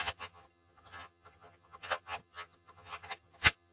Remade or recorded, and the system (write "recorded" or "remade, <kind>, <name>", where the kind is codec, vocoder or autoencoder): remade, vocoder, HiFi-GAN